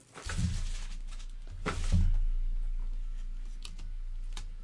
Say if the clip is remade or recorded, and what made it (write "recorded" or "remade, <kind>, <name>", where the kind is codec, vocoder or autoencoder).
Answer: recorded